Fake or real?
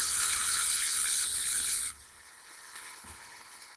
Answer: fake